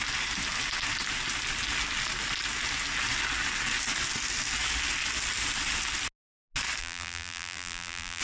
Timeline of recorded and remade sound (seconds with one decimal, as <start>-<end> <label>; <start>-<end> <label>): 0.0-6.8 recorded; 6.8-8.2 remade